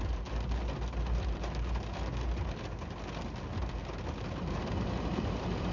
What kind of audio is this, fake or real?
real